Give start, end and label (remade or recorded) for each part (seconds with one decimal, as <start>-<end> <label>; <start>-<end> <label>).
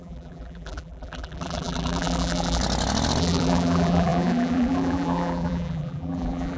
0.0-2.6 remade; 2.6-3.2 recorded; 3.2-6.6 remade